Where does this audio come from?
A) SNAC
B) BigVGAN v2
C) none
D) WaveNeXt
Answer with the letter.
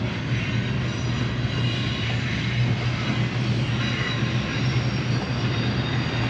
C